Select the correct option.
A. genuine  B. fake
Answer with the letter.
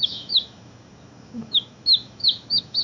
B